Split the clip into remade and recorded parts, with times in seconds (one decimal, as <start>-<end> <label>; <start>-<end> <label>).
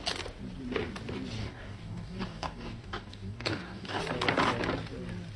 0.0-1.4 recorded; 1.4-4.0 remade; 4.0-5.4 recorded